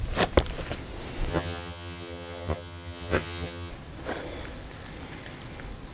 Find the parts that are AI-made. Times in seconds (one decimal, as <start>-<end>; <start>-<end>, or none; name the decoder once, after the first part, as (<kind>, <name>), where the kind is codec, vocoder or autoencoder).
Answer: 1.3-3.7 (vocoder, HiFi-GAN)